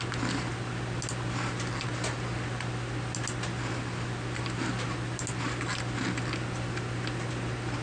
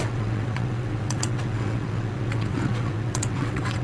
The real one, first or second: first